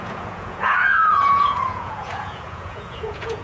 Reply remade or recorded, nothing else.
remade